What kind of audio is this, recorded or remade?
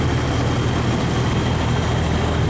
recorded